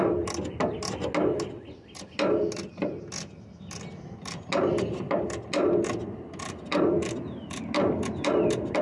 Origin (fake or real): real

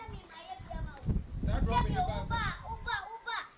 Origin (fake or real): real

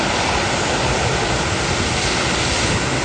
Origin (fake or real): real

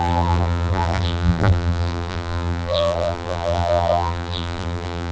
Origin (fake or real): fake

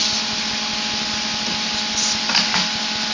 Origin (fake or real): real